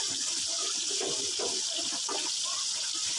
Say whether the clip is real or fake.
real